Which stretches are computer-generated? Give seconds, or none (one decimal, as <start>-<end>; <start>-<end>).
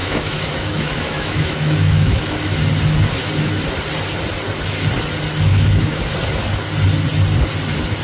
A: 0.0-2.2; 5.5-6.0